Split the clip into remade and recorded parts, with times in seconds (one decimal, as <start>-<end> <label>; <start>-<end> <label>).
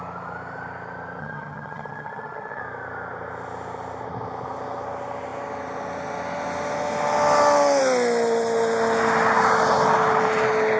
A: 0.0-1.2 recorded; 1.2-2.6 remade; 2.6-10.8 recorded